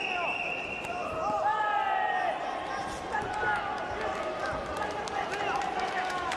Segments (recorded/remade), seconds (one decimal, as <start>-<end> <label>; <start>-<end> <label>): 0.0-6.4 recorded